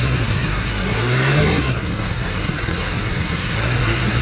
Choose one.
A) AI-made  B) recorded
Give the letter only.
A